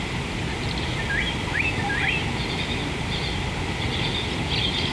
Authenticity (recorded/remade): recorded